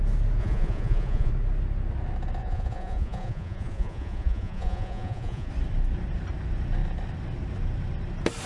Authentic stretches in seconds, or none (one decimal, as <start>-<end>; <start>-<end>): 0.0-0.4; 1.3-2.4; 5.5-8.5